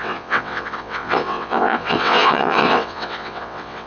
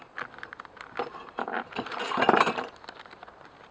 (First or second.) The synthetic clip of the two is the first